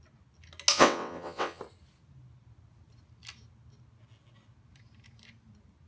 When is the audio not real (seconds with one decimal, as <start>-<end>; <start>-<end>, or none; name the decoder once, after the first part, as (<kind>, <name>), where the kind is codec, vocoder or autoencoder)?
0.7-1.6 (vocoder, WaveNeXt)